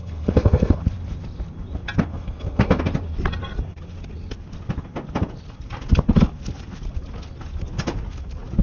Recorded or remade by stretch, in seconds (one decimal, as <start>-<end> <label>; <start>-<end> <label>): 0.0-0.8 remade; 0.8-2.1 recorded; 2.1-2.8 remade; 2.8-8.6 recorded